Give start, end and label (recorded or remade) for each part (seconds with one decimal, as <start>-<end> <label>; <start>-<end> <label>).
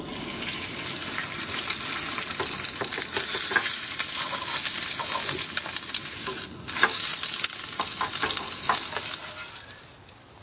0.0-1.0 recorded; 1.0-1.8 remade; 1.8-10.4 recorded